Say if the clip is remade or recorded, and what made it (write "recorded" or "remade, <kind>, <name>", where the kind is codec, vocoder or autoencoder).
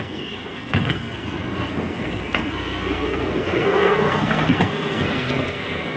remade, codec, SNAC